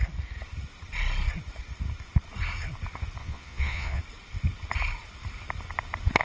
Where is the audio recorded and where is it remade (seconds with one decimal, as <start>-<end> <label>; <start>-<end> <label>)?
0.0-3.2 recorded; 3.2-4.0 remade; 4.0-6.2 recorded